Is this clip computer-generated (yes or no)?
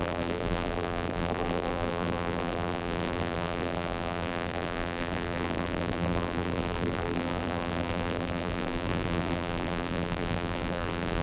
yes